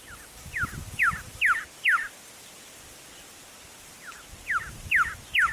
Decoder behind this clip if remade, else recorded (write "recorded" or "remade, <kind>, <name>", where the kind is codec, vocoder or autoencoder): recorded